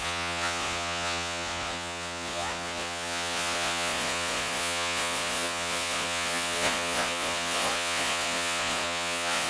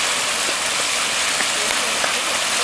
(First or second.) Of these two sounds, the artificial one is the first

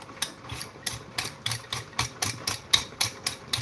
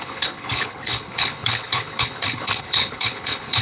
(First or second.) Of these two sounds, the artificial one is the second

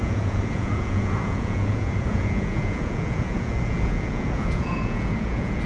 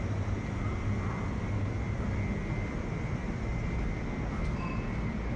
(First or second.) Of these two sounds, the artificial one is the first